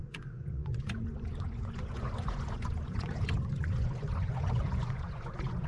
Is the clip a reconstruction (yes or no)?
yes